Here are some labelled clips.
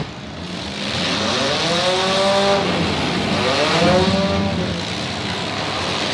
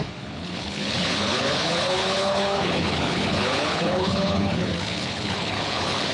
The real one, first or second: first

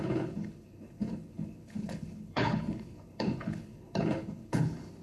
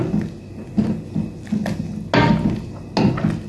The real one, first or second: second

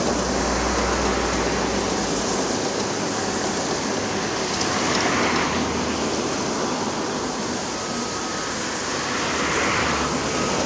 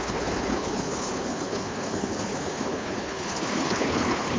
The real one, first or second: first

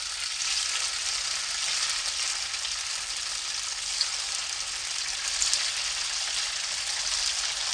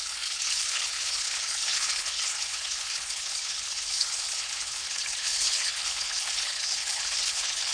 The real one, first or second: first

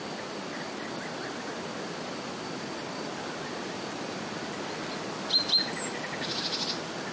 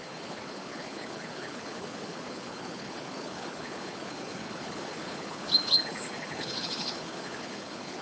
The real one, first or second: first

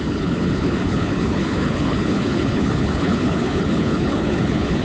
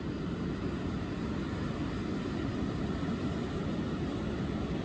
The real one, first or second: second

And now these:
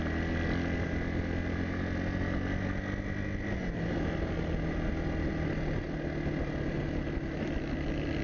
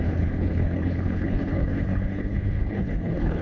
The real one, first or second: first